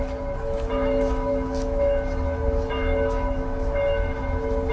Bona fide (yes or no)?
no